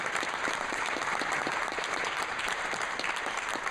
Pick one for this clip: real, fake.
fake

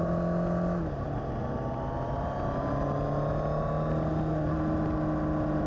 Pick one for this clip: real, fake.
real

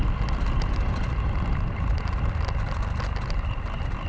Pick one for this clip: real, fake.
real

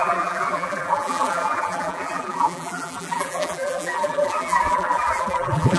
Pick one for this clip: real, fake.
fake